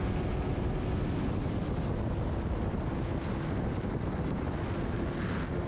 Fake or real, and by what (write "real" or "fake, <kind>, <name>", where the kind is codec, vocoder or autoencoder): real